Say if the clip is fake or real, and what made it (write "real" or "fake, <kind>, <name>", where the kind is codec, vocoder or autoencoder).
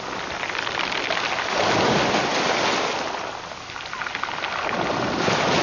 real